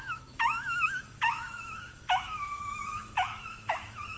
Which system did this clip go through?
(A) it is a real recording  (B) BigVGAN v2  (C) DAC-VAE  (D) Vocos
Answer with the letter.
C